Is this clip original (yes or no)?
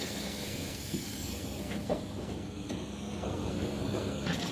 no